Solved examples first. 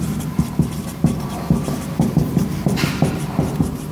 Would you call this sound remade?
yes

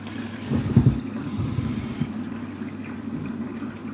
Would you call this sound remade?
yes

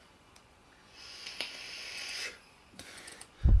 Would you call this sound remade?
yes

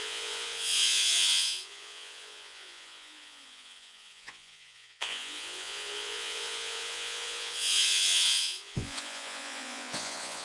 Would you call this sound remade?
yes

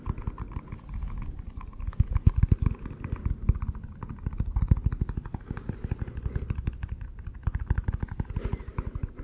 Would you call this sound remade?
no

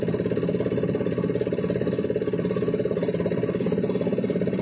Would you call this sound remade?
no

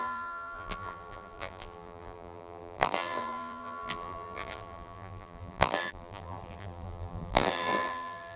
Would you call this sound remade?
yes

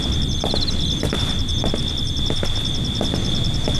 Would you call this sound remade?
no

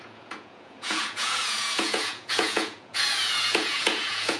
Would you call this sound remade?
yes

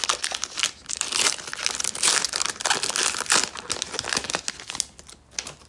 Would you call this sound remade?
no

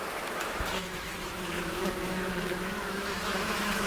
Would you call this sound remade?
yes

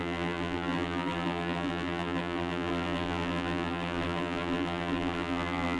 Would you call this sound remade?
yes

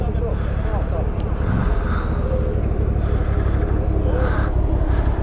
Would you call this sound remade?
no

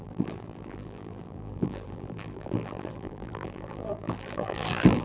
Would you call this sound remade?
yes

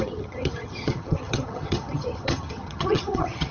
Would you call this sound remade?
yes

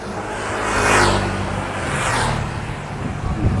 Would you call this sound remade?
no